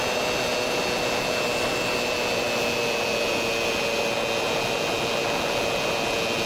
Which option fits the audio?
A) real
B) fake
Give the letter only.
A